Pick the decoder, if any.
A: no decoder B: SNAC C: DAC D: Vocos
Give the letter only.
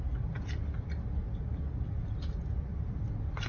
A